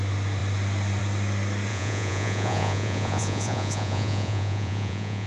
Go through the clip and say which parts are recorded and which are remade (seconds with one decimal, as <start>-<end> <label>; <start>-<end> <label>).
0.0-1.7 recorded; 1.7-5.3 remade